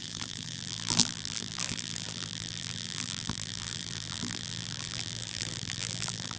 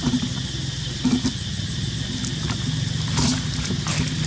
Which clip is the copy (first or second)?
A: first